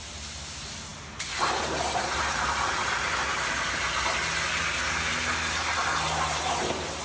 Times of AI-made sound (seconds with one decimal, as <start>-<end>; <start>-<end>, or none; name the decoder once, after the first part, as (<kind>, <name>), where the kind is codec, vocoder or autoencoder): none